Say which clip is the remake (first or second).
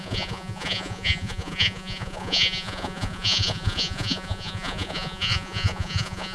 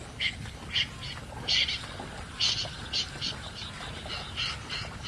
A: first